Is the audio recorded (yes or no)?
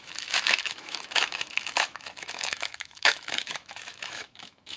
no